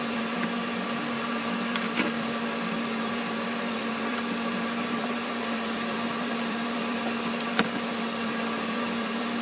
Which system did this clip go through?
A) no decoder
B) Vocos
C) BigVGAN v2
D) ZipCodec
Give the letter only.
C